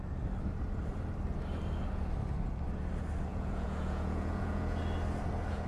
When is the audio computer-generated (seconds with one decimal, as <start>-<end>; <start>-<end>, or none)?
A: 3.3-4.8